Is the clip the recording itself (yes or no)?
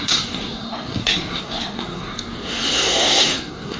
no